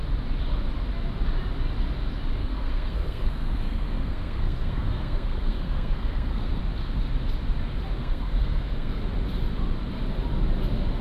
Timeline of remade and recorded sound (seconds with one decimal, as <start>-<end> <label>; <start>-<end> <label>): 0.0-2.4 recorded; 2.4-6.6 remade; 6.6-8.0 recorded; 8.0-9.0 remade; 9.0-11.0 recorded